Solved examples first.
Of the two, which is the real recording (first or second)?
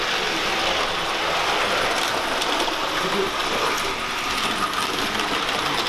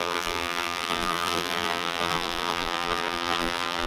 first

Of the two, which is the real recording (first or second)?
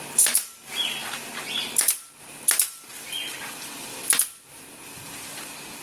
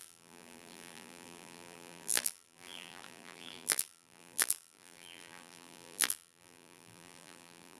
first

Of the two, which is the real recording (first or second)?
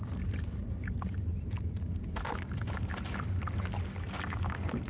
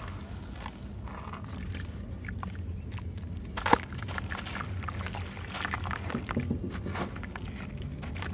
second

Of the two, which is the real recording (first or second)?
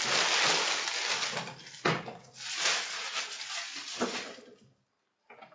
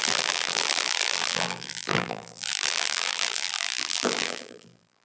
first